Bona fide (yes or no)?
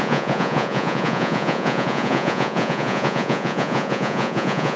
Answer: no